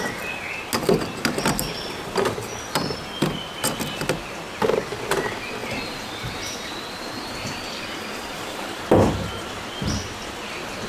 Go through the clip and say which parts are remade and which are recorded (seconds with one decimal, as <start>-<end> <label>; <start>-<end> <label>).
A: 0.0-5.6 recorded; 5.6-8.8 remade; 8.8-10.9 recorded